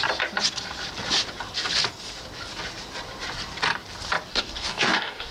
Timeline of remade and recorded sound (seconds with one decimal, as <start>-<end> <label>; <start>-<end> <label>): 0.0-4.3 recorded; 4.3-5.3 remade